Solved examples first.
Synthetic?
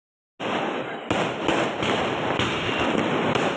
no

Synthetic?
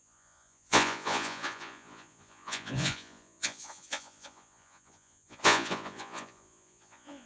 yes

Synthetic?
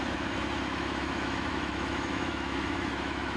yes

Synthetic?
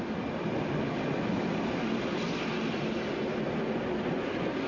no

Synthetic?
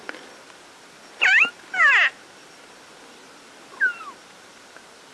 no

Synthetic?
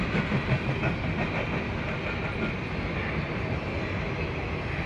no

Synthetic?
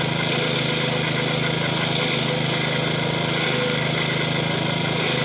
no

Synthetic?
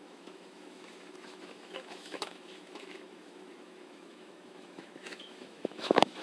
yes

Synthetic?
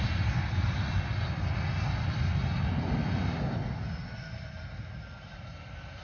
no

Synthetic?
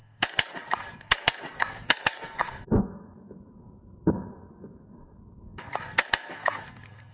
yes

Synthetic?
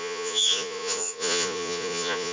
yes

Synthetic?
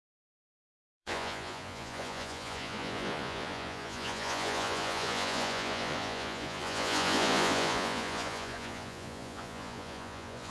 yes